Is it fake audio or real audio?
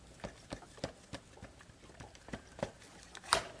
real